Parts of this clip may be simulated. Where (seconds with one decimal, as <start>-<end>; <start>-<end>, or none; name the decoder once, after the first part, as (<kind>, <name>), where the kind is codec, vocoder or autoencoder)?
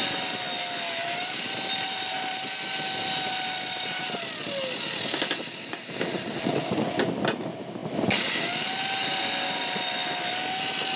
none